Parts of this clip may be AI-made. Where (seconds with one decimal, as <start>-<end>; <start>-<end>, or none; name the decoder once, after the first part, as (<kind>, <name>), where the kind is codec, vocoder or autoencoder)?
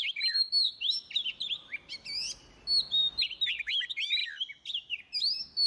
none